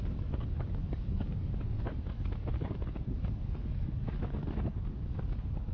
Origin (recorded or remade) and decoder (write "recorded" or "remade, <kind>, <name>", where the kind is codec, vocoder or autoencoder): remade, codec, DAC